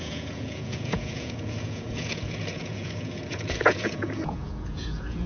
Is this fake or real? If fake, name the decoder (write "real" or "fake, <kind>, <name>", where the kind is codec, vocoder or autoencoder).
fake, vocoder, Vocos